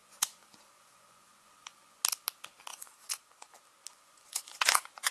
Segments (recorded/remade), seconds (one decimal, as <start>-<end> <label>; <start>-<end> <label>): 0.0-2.0 remade; 2.0-2.7 recorded; 2.7-3.5 remade; 3.5-3.9 recorded; 3.9-5.1 remade